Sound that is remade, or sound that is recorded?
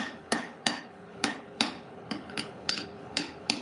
remade